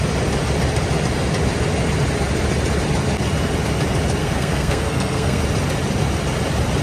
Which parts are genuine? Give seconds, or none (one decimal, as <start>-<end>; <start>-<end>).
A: 0.0-4.2; 5.4-6.8